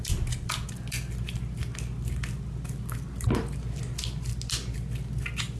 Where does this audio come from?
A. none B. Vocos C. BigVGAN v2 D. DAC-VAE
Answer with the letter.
A